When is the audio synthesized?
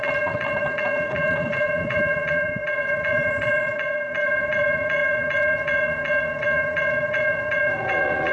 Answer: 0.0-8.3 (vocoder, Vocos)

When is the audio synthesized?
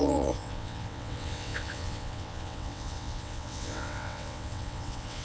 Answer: 0.0-5.2 (vocoder, WaveNeXt)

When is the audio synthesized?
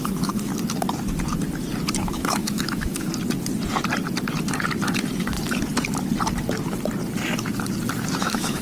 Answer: 0.0-0.5 (autoencoder, DAC-VAE); 2.0-3.1; 8.2-8.6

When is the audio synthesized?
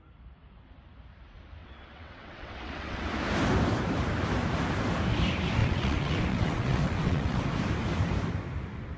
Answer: 1.6-3.0 (vocoder, WaveNeXt); 5.6-7.4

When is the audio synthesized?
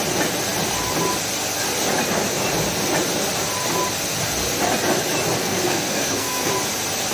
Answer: 5.4-6.5 (codec, SNAC)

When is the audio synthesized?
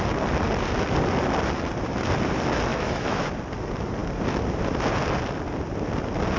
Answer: 2.7-3.3 (autoencoder, DAC-VAE)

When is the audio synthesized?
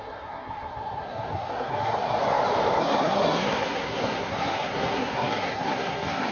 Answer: 0.0-2.2 (codec, SNAC); 2.8-6.3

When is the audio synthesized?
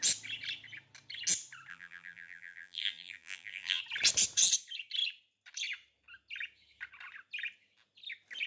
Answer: 1.7-3.8 (vocoder, BigVGAN v2)